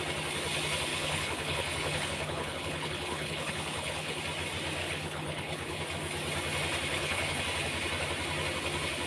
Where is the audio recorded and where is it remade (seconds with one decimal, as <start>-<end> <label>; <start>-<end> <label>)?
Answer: 0.0-0.9 recorded; 0.9-4.2 remade; 4.2-4.8 recorded; 4.8-5.8 remade; 5.8-6.9 recorded; 6.9-7.4 remade; 7.4-9.1 recorded